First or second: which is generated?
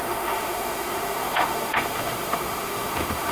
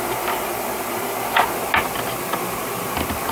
first